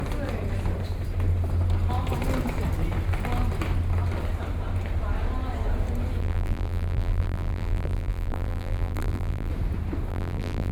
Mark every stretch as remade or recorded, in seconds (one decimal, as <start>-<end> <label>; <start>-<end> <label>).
0.0-6.2 recorded; 6.2-9.5 remade; 9.5-10.1 recorded; 10.1-10.7 remade